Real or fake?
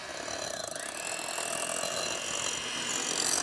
real